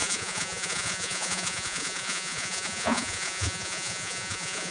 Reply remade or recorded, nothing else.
remade